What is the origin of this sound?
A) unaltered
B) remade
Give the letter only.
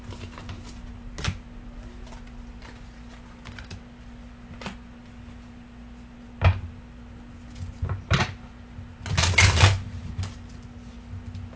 A